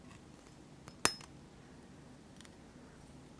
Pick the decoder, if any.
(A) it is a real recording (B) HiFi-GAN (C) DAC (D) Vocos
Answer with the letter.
A